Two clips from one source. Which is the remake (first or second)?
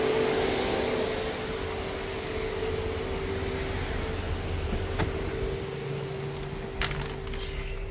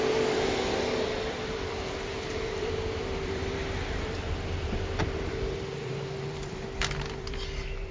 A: second